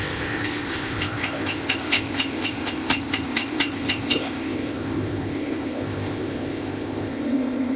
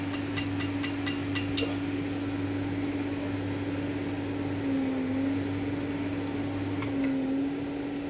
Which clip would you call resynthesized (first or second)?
first